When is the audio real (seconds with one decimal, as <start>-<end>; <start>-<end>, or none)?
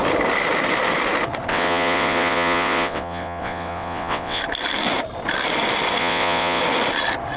0.0-1.5; 4.4-6.0; 6.6-7.4